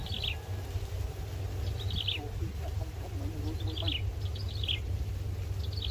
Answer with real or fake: real